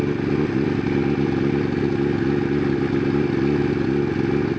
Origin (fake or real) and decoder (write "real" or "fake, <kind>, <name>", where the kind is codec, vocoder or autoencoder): real